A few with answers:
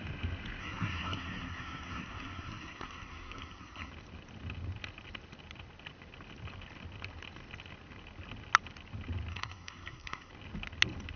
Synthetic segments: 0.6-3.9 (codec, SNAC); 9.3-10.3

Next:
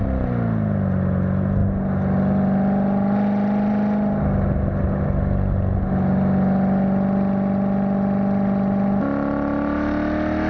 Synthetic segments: none